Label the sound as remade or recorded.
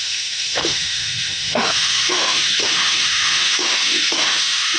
remade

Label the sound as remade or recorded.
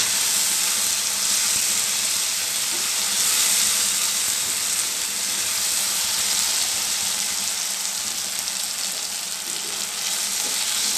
recorded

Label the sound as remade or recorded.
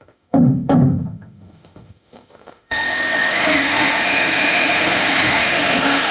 remade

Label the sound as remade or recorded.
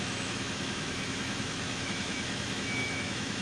remade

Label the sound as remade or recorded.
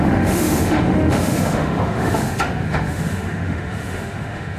remade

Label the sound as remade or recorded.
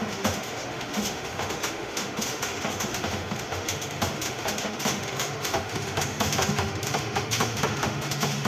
remade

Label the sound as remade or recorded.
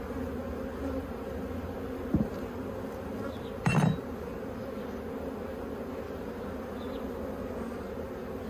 recorded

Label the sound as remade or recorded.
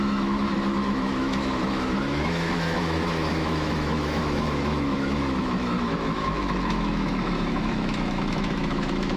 remade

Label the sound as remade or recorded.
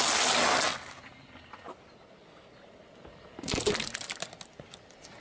recorded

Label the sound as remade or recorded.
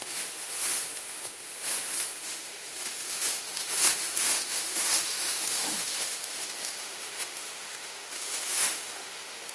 remade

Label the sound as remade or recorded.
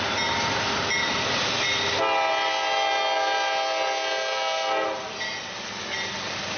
recorded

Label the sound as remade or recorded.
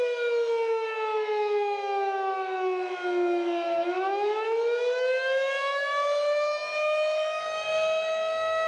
remade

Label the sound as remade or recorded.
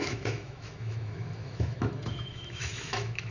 remade